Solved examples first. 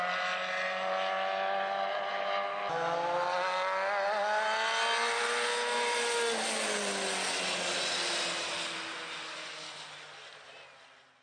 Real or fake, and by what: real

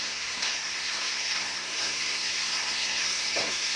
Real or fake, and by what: fake, codec, SNAC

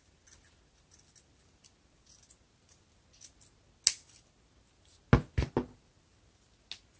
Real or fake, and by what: real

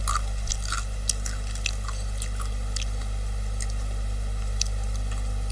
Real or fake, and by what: real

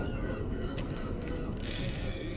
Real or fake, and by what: fake, codec, SNAC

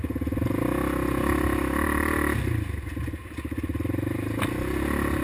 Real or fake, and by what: real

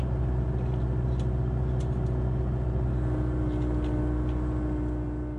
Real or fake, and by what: real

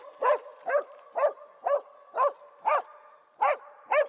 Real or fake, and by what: real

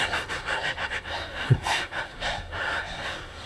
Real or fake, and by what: fake, codec, SNAC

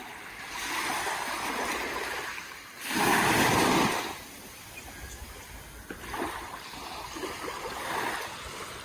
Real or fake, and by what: real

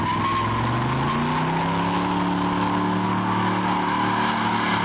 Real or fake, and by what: real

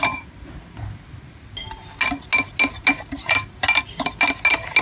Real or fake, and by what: real